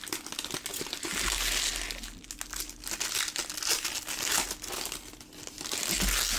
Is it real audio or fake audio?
real